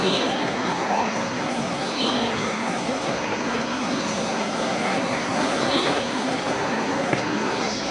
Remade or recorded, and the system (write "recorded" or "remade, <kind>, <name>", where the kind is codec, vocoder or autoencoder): remade, codec, SNAC